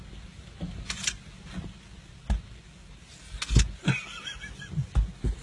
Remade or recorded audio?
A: recorded